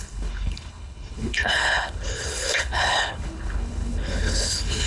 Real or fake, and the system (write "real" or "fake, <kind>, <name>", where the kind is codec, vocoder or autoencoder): fake, codec, HILCodec